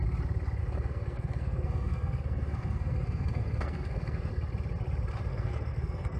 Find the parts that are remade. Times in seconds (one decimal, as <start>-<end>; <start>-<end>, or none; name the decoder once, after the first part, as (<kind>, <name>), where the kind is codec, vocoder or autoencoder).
0.6-4.3 (codec, SNAC); 5.3-6.2